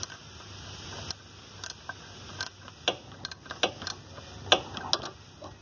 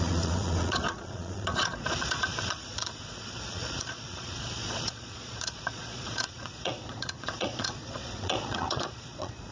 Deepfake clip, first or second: second